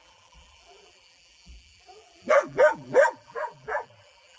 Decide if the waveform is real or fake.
fake